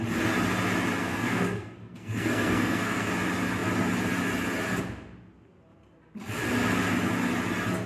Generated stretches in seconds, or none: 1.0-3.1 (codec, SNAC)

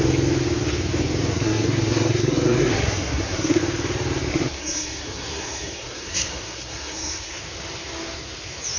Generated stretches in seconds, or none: 1.3-3.6 (codec, SNAC); 4.3-7.4

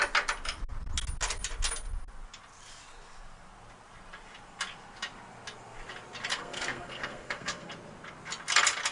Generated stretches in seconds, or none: 6.3-7.7 (codec, SNAC)

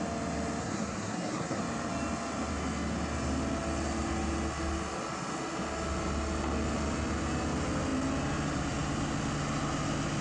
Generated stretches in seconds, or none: 0.6-1.6 (codec, SNAC)

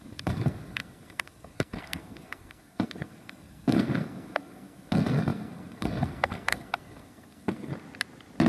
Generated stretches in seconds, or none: 0.0-7.7 (codec, SNAC)